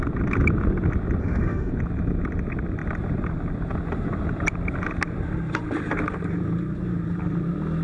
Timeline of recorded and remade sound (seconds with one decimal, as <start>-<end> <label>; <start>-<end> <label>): 0.0-1.2 recorded; 1.2-1.7 remade; 1.7-7.8 recorded